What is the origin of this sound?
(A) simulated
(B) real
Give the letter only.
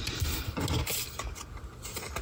B